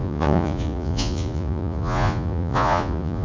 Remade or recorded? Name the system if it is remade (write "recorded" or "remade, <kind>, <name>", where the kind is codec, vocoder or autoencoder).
remade, vocoder, Vocos